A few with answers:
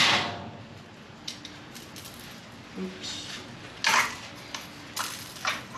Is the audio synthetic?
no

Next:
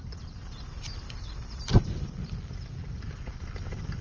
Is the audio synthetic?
no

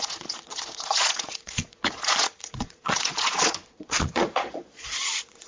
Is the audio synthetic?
yes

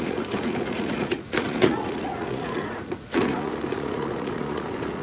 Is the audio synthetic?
yes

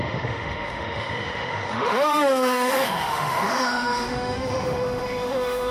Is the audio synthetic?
yes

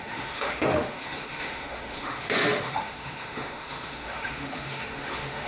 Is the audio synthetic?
yes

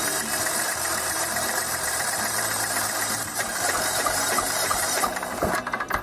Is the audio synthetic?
yes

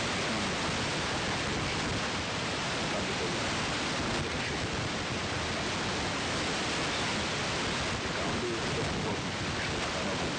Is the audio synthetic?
no